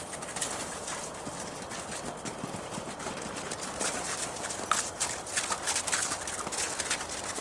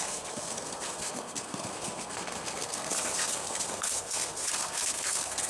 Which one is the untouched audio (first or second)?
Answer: first